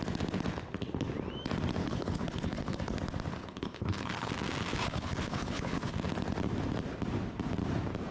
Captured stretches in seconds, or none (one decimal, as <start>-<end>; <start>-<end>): 0.0-1.8; 3.0-3.4; 4.3-4.8; 5.9-8.1